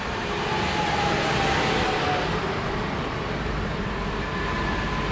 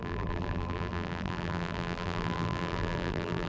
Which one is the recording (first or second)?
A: first